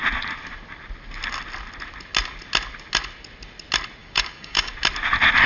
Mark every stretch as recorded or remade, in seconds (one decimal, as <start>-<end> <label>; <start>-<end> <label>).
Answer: 0.0-4.0 recorded; 4.0-4.7 remade; 4.7-5.5 recorded